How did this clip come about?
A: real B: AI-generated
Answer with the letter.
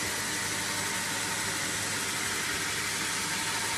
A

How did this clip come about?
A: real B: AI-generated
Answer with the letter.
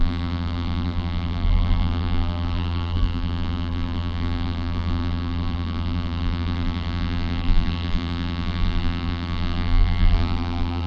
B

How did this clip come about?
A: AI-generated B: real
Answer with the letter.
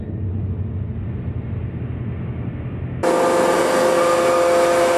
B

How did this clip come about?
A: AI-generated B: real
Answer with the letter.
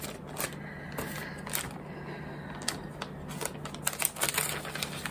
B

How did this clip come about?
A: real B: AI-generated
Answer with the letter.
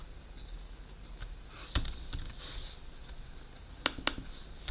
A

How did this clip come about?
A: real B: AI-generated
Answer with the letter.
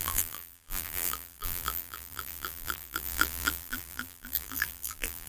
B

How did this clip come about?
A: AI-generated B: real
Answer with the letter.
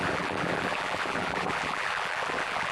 A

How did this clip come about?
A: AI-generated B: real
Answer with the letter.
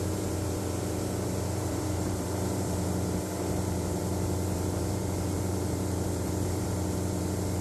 A